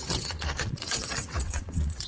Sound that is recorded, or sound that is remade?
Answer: remade